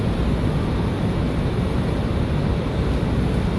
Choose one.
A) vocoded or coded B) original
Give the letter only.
B